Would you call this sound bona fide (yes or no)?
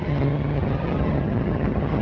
no